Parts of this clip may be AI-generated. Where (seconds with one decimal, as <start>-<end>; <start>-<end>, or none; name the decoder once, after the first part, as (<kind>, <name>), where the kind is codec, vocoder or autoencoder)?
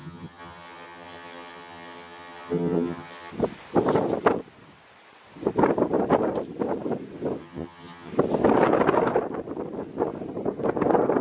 0.0-3.3 (vocoder, HiFi-GAN); 7.4-8.1